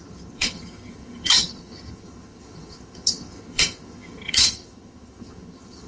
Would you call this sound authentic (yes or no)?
no